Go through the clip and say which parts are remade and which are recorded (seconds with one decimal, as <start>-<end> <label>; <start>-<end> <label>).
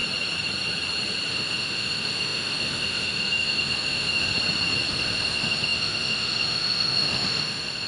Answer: 0.0-1.3 recorded; 1.3-4.3 remade; 4.3-4.9 recorded; 4.9-7.9 remade